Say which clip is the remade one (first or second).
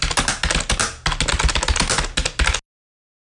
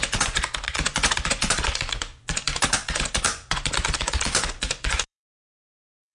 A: second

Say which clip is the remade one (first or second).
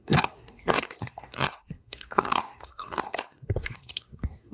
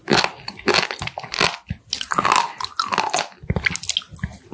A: first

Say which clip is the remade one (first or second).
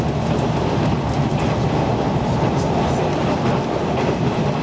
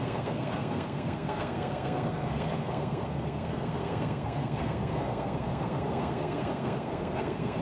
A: second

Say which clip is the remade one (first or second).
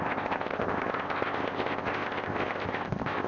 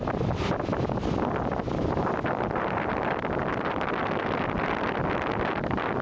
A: first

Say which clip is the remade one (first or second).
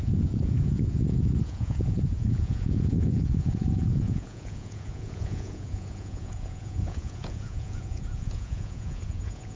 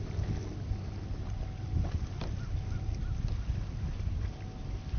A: first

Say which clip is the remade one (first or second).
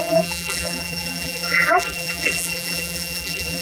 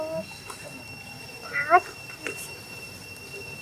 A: first